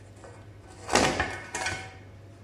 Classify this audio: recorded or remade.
recorded